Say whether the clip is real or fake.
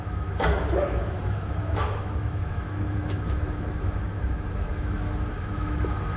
fake